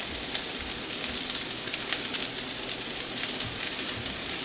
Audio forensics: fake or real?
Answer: real